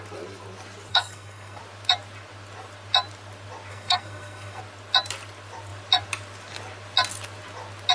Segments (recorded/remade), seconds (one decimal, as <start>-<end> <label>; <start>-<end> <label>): 0.0-0.9 recorded; 0.9-1.6 remade; 1.6-3.7 recorded; 3.7-4.6 remade; 4.6-7.9 recorded